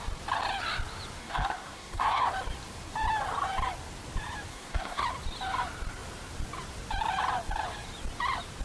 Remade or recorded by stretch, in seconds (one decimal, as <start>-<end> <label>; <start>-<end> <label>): 0.0-1.2 recorded; 1.2-2.3 remade; 2.3-4.5 recorded; 4.5-5.0 remade; 5.0-8.6 recorded